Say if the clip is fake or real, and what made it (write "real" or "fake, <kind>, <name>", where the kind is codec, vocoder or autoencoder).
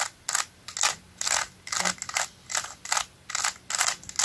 real